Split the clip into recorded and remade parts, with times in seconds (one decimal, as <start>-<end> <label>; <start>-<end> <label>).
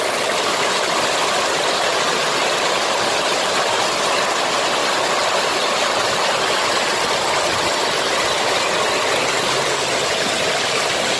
0.0-11.2 recorded